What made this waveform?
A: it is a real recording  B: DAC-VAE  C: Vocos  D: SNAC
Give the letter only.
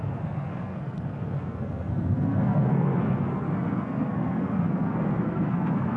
D